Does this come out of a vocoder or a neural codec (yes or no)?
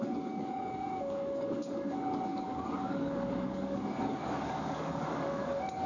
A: yes